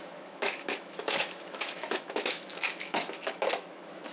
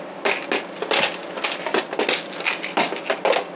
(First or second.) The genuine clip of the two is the second